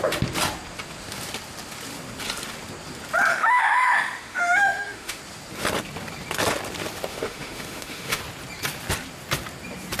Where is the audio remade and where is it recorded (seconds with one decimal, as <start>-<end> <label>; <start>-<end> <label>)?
0.0-3.3 recorded; 3.3-5.2 remade; 5.2-7.1 recorded; 7.1-8.2 remade; 8.2-10.0 recorded

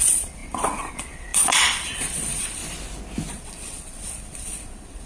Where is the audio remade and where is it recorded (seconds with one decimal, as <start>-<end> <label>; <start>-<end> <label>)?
0.0-2.6 remade; 2.6-3.3 recorded; 3.3-5.1 remade